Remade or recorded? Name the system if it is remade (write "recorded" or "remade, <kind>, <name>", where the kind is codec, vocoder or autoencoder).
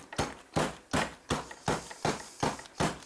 recorded